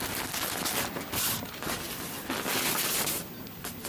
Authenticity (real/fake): real